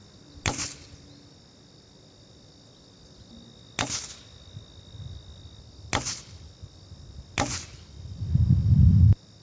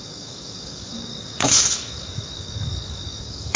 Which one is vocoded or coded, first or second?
second